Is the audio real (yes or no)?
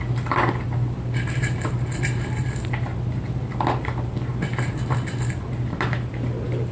no